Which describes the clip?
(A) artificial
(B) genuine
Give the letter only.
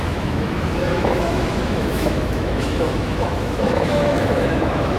A